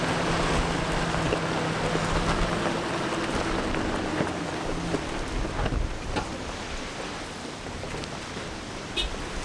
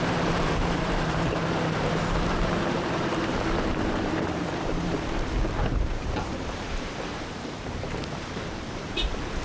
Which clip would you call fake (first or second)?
second